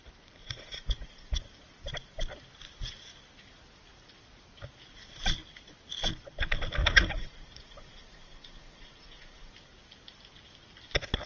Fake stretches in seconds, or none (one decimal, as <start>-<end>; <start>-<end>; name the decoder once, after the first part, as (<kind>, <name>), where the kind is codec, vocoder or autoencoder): 0.4-1.4 (vocoder, Vocos); 6.8-9.5